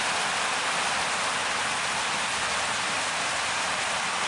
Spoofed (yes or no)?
no